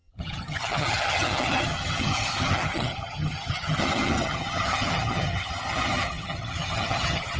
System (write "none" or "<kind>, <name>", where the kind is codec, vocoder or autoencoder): vocoder, HiFi-GAN